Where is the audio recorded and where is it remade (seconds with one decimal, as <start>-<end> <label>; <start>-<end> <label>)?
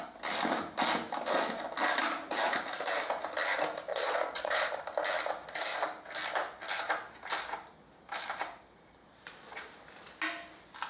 0.0-3.9 recorded; 3.9-4.7 remade; 4.7-9.0 recorded; 9.0-9.7 remade; 9.7-10.9 recorded